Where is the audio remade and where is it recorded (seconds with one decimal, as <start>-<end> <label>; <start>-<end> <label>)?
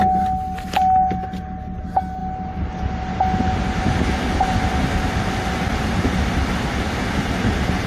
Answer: 0.0-7.9 recorded